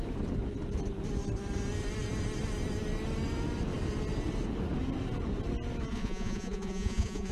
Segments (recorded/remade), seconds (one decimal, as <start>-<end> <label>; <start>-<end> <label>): 0.0-5.9 recorded; 5.9-7.3 remade